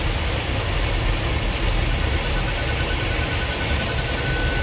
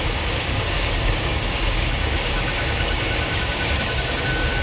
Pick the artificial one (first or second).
second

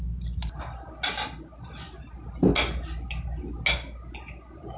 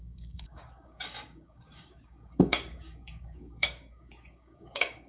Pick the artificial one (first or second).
second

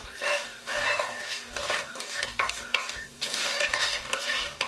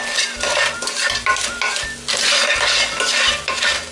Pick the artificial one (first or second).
first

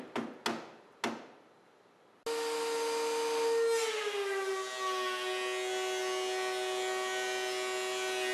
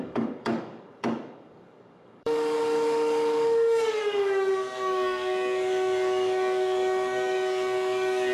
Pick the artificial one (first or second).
second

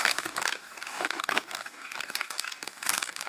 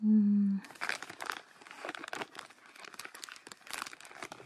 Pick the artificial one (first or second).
first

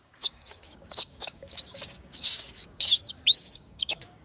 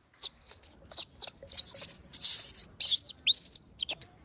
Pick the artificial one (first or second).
first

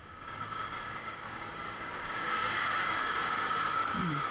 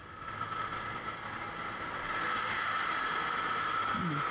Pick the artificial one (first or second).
first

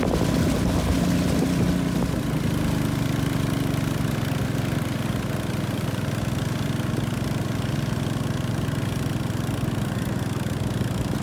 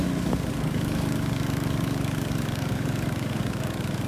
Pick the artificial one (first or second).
second